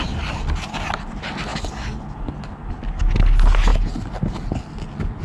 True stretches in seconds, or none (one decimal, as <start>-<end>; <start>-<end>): 0.0-5.2